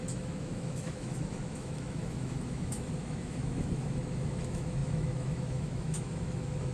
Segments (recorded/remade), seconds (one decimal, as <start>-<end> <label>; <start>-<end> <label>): 0.0-6.7 remade